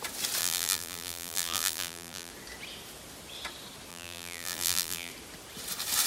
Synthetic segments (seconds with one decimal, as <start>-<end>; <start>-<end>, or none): 0.4-2.3; 3.9-5.1